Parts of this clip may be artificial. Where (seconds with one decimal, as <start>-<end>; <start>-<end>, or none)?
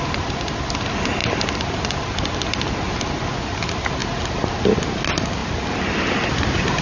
none